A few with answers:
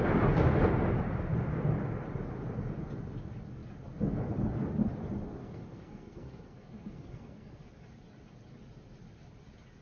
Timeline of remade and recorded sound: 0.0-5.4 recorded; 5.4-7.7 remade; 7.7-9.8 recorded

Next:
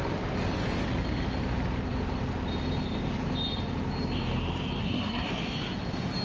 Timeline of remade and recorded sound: 0.0-4.8 recorded; 4.8-5.3 remade; 5.3-6.2 recorded

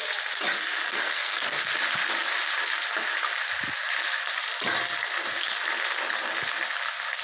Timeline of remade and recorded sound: 0.0-0.9 recorded; 0.9-1.6 remade; 1.6-7.2 recorded

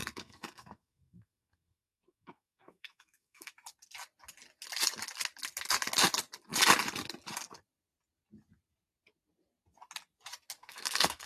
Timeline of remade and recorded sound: 0.0-3.5 remade; 3.5-10.6 recorded; 10.6-11.3 remade

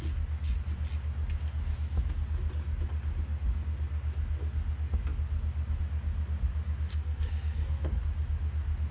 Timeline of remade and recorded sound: 0.0-6.9 recorded; 6.9-8.0 remade; 8.0-8.9 recorded

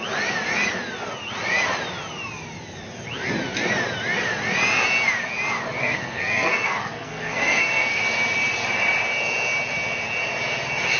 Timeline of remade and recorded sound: 0.0-5.8 recorded; 5.8-8.0 remade; 8.0-11.0 recorded

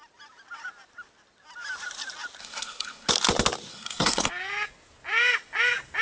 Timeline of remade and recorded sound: 0.0-2.4 recorded; 2.4-3.1 remade; 3.1-3.7 recorded; 3.7-4.3 remade; 4.3-6.0 recorded